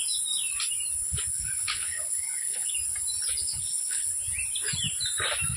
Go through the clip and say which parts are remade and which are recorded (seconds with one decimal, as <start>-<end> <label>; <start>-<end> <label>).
0.0-1.3 recorded; 1.3-2.7 remade; 2.7-3.4 recorded; 3.4-4.1 remade; 4.1-5.6 recorded